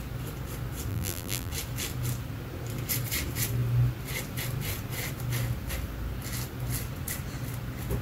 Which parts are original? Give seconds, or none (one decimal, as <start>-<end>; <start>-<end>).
0.0-0.9; 1.5-8.0